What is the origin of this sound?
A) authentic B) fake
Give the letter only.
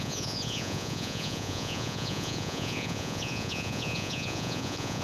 B